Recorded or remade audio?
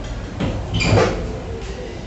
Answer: recorded